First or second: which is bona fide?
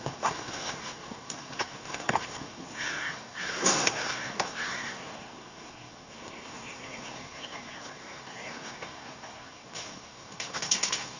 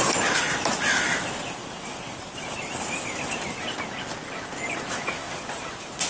second